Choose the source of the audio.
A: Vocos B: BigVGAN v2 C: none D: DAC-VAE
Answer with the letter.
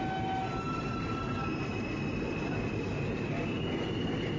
C